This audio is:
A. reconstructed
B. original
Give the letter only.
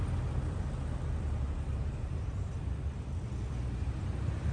B